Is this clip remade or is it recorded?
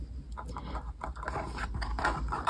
recorded